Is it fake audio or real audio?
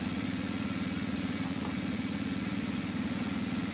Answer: fake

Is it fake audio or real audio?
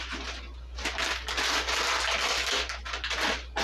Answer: real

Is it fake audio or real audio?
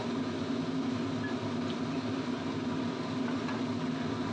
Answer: real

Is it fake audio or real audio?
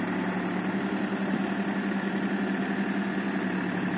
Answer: real